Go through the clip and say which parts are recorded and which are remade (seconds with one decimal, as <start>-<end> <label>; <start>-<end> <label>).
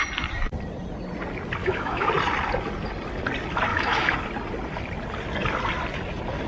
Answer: 0.0-1.6 recorded; 1.6-2.1 remade; 2.1-3.7 recorded; 3.7-4.2 remade; 4.2-6.5 recorded